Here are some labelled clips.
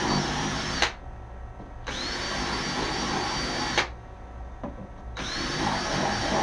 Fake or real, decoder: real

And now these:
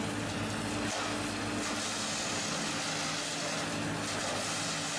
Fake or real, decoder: real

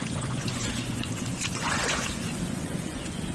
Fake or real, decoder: fake, vocoder, Vocos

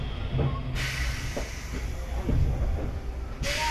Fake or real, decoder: real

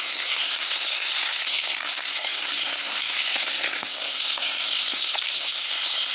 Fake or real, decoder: fake, codec, SNAC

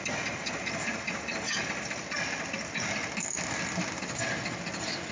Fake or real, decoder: real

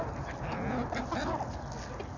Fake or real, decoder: real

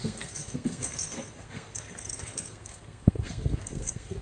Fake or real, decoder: fake, codec, SNAC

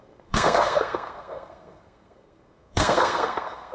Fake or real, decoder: fake, codec, SNAC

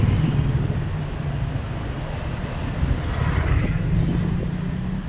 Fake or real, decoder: real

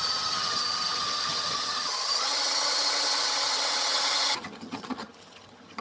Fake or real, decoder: fake, vocoder, HiFi-GAN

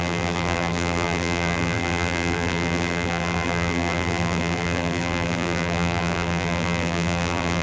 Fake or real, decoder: fake, vocoder, BigVGAN v2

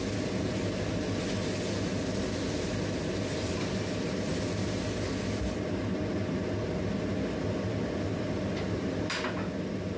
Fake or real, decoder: real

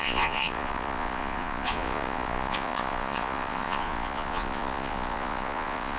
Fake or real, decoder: fake, vocoder, Vocos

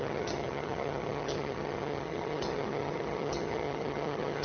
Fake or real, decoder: fake, vocoder, HiFi-GAN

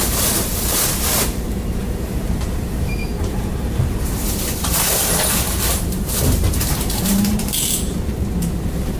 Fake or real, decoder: fake, vocoder, BigVGAN v2